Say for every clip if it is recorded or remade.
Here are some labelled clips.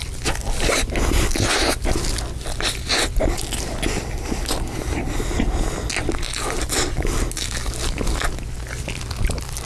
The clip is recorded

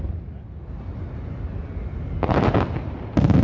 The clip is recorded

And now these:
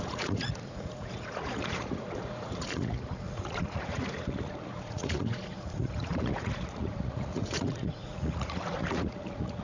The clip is remade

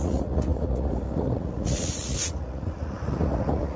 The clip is remade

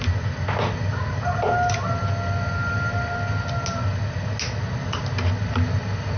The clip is recorded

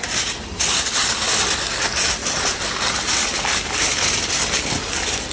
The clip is recorded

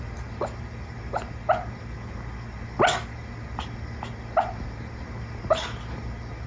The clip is recorded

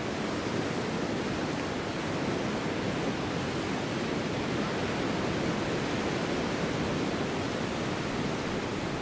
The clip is recorded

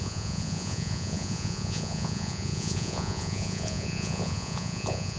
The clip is remade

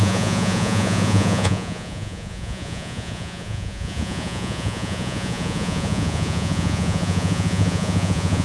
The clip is remade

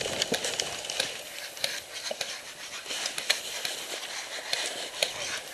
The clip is recorded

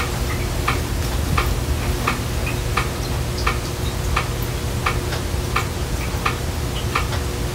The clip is recorded